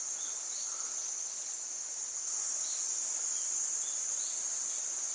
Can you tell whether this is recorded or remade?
recorded